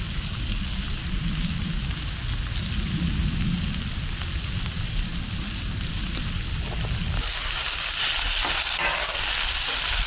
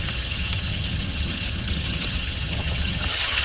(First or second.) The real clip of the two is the first